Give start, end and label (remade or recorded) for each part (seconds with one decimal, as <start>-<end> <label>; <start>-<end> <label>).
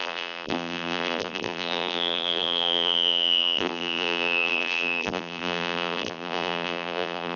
0.0-7.4 remade